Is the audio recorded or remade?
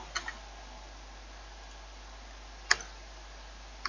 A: recorded